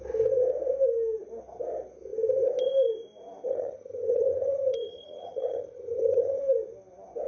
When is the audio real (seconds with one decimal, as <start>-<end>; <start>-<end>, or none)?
0.0-3.5; 6.4-7.3